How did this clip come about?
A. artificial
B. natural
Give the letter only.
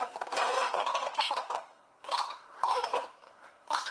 A